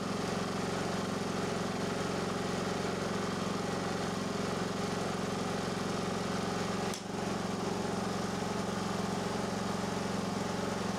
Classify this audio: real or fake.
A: real